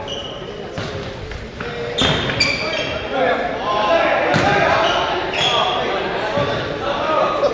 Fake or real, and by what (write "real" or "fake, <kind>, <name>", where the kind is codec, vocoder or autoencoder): real